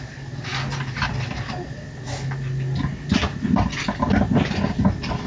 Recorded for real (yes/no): yes